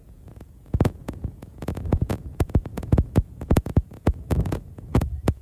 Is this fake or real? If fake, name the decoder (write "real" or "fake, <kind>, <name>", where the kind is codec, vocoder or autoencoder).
fake, vocoder, Vocos